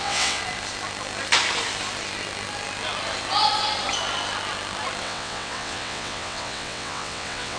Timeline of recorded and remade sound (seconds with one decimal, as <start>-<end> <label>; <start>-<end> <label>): 0.0-0.4 remade; 0.4-5.0 recorded; 5.0-7.6 remade